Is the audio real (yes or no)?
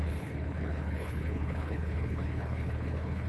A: no